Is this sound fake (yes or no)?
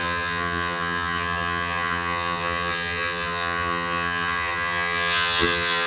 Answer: yes